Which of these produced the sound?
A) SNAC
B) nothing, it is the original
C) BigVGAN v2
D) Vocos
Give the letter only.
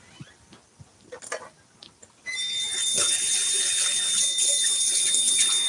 B